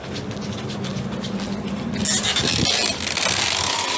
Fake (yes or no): no